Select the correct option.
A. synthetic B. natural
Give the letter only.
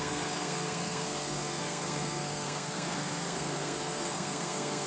A